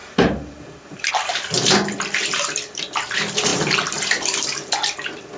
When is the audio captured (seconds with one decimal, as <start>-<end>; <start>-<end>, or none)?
1.1-5.4